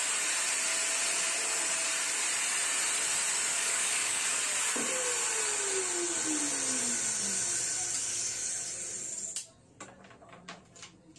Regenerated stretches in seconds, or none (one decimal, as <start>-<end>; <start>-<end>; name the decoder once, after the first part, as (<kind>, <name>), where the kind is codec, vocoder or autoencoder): 3.5-4.4 (codec, DAC); 8.0-8.5